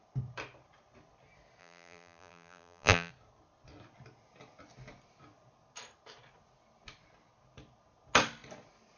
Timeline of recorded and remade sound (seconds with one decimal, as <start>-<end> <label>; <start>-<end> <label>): 0.0-1.6 recorded; 1.6-3.1 remade; 3.1-9.0 recorded